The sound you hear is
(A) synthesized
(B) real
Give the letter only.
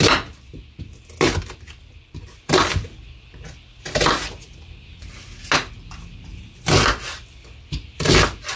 B